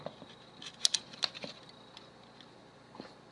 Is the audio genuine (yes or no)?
yes